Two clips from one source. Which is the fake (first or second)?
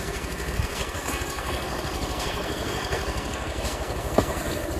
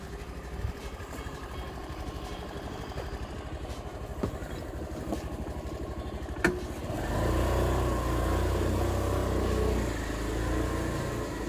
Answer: first